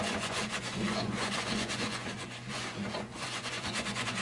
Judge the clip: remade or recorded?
remade